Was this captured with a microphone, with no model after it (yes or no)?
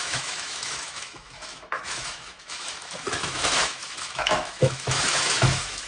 no